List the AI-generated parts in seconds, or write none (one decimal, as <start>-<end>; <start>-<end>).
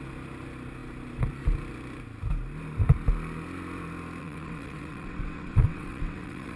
4.2-6.6